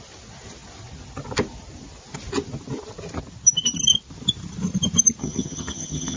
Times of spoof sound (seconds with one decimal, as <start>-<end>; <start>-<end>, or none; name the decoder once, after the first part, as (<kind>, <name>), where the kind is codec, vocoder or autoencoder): 5.2-6.2 (vocoder, HiFi-GAN)